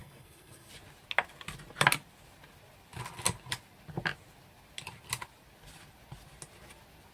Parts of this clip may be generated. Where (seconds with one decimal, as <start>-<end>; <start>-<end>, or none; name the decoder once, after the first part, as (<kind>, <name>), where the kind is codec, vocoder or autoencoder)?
0.0-0.7 (codec, SNAC)